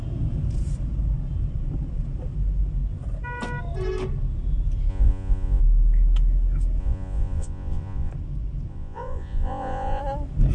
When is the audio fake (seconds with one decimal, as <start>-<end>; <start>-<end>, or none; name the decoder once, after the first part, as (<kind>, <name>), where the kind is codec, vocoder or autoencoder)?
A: 4.9-5.6 (vocoder, Vocos); 6.8-8.1; 8.7-10.0